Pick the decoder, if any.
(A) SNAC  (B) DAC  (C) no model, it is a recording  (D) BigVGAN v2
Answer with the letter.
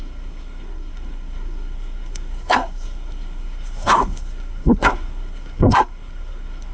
A